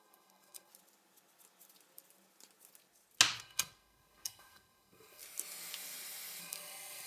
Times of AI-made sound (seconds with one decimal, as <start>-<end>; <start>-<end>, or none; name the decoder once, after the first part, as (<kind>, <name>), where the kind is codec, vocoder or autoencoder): 0.0-0.7 (codec, SNAC); 3.4-5.2; 6.4-7.1